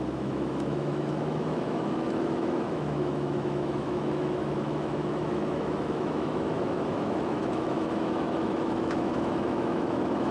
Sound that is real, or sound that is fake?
fake